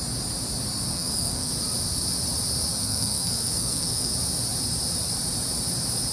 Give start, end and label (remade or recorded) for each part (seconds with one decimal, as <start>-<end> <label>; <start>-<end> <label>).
0.0-0.9 recorded; 0.9-1.5 remade; 1.5-2.7 recorded; 2.7-4.1 remade; 4.1-6.1 recorded